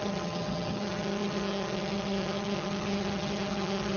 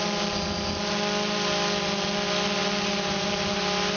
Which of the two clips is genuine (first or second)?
second